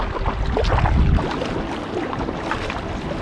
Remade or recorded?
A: recorded